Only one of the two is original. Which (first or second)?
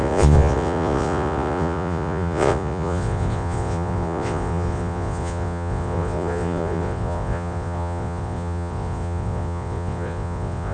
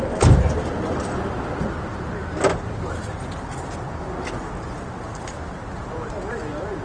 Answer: second